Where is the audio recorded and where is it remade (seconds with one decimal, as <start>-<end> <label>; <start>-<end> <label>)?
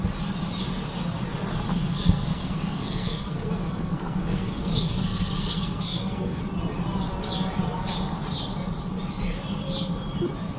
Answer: 0.0-1.7 recorded; 1.7-6.4 remade; 6.4-10.6 recorded